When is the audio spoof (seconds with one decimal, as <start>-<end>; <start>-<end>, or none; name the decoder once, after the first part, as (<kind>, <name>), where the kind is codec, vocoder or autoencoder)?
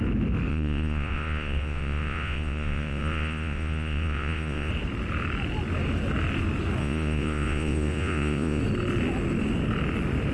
0.5-4.7 (vocoder, Vocos); 6.8-8.6